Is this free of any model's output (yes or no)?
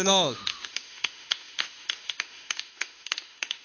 no